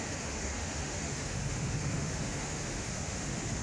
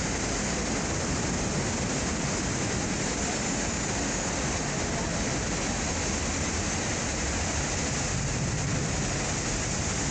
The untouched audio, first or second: second